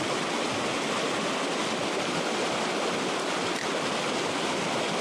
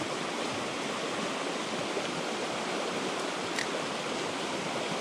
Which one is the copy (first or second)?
second